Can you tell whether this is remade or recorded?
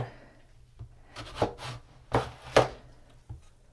recorded